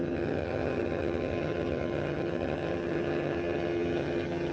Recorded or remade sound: remade